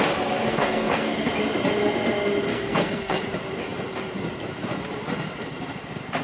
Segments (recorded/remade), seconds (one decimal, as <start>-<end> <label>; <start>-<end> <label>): 0.0-0.5 recorded; 0.5-1.3 remade; 1.3-2.5 recorded; 2.5-3.2 remade; 3.2-6.2 recorded